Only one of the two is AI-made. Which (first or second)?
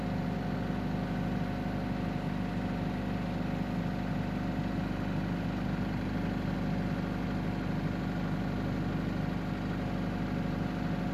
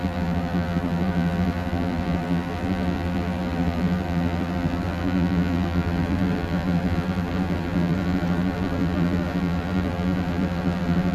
second